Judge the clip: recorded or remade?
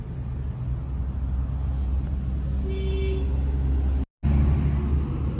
recorded